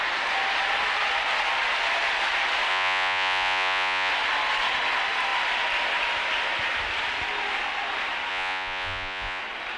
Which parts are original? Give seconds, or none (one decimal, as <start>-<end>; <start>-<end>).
0.0-2.7; 4.1-8.3; 9.4-9.8